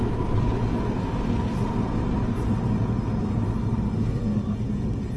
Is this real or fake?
real